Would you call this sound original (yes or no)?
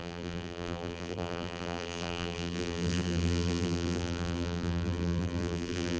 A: no